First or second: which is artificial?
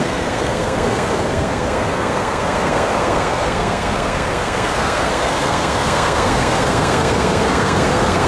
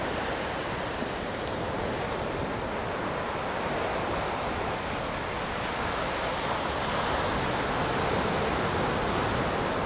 first